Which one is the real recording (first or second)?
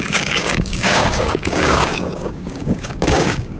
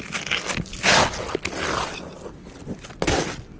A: second